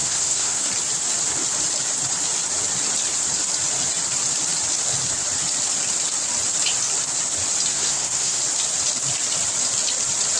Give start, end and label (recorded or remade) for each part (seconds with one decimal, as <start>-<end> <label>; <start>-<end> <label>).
0.0-0.7 remade; 0.7-7.7 recorded; 7.7-8.4 remade; 8.4-10.4 recorded

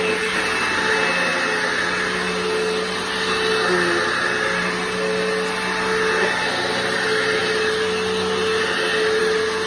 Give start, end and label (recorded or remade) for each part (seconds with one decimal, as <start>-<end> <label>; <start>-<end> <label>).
0.0-9.7 recorded

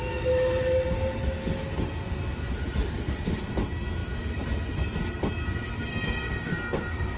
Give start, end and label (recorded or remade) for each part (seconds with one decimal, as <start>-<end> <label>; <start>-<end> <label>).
0.0-5.9 recorded; 5.9-7.2 remade

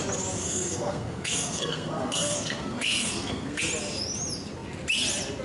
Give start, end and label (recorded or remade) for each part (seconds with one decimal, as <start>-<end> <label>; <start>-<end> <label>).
0.0-0.4 recorded; 0.4-3.6 remade; 3.6-5.4 recorded

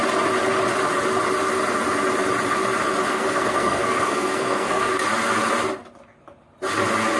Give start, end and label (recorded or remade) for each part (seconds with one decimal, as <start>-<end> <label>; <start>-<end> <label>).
0.0-3.1 recorded; 3.1-4.9 remade; 4.9-7.2 recorded

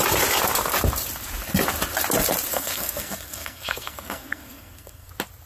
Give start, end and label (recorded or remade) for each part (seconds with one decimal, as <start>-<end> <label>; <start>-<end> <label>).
0.0-2.5 recorded; 2.5-5.1 remade; 5.1-5.5 recorded

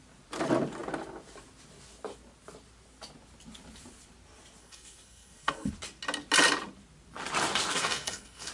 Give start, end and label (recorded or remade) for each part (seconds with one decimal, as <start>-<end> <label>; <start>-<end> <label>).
0.0-4.6 recorded; 4.6-5.7 remade; 5.7-7.7 recorded; 7.7-8.5 remade